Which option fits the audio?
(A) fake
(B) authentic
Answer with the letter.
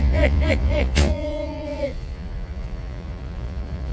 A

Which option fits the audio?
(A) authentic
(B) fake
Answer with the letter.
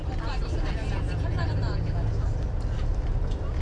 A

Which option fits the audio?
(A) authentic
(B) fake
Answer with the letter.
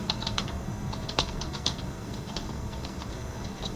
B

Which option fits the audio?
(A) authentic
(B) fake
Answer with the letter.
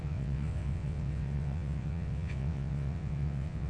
B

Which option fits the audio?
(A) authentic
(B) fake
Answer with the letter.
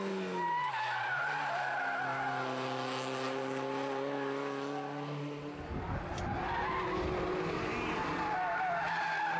A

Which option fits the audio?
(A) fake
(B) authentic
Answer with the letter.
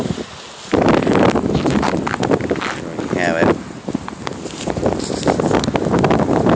B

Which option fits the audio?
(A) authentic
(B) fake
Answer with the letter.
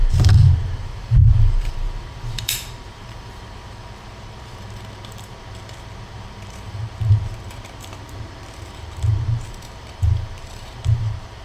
B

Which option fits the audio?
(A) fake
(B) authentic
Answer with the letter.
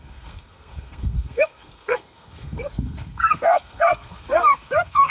A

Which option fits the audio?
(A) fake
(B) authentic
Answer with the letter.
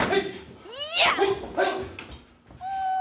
B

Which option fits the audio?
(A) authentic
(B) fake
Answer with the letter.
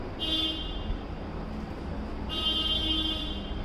A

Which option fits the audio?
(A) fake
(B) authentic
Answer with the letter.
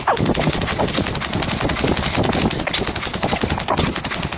B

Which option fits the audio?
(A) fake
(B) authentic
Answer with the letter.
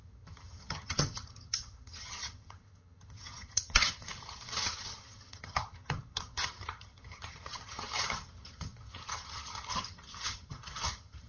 A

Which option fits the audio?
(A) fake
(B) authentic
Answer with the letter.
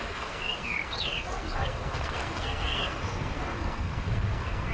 A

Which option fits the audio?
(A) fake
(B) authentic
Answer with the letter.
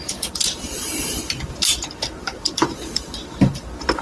A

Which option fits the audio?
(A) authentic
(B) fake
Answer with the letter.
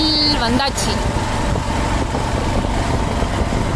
A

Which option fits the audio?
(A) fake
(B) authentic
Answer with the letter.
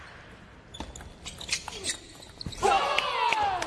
B